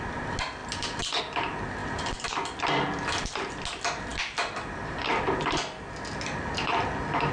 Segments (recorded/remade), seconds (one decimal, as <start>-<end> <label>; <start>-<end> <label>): 0.0-7.3 recorded